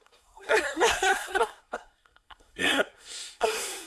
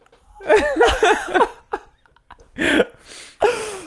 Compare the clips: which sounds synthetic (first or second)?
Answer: first